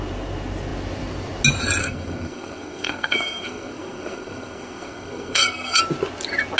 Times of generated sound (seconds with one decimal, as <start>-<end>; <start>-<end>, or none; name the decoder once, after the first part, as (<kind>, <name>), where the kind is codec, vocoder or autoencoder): 1.8-5.8 (codec, SNAC)